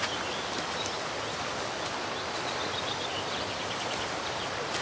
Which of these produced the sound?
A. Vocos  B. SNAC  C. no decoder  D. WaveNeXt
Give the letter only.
C